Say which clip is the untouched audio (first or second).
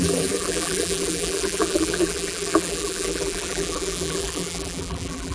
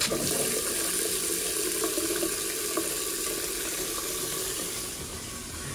second